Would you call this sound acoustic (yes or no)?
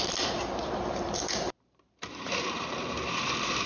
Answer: no